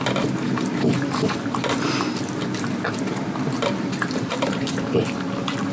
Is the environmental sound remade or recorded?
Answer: remade